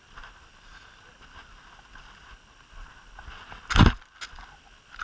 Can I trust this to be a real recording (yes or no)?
yes